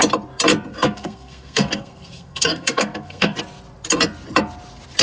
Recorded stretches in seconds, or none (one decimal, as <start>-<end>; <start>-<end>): 0.0-0.7; 3.4-5.0